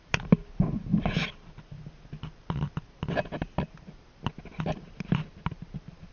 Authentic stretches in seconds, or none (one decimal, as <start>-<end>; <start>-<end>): 0.0-6.1